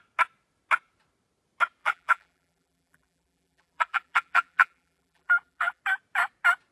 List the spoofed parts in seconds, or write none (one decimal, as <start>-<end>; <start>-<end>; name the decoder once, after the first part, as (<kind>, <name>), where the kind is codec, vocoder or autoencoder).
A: 1.8-5.8 (vocoder, BigVGAN v2)